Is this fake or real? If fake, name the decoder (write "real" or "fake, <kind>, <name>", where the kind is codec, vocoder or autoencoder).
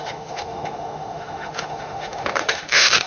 fake, autoencoder, DAC-VAE